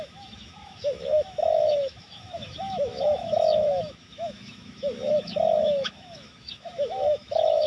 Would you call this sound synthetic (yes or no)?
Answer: yes